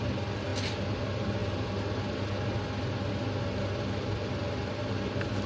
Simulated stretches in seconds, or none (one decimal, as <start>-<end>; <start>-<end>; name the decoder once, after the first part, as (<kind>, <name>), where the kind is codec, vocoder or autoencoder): none